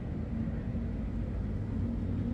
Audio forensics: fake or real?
real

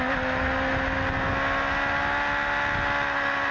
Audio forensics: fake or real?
real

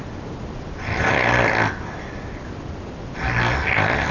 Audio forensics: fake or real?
real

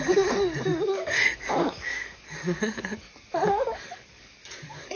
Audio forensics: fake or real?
fake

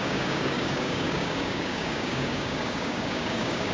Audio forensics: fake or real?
fake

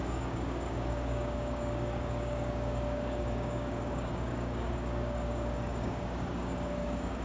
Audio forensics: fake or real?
fake